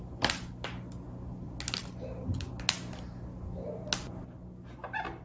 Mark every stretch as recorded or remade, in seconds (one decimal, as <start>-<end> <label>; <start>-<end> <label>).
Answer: 0.0-5.2 recorded